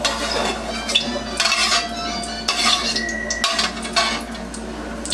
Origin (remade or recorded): recorded